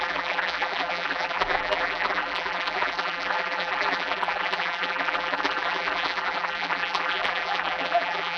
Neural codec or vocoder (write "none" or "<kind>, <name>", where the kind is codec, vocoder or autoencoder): vocoder, BigVGAN v2